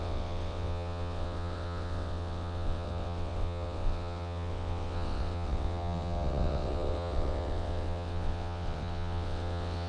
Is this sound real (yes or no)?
no